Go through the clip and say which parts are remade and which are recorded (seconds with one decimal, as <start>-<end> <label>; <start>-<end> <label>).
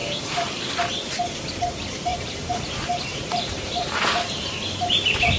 0.0-0.9 remade; 0.9-2.1 recorded; 2.1-2.7 remade; 2.7-3.1 recorded; 3.1-4.0 remade; 4.0-5.4 recorded